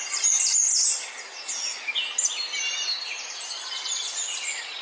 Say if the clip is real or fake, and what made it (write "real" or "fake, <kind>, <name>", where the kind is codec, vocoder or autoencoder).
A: real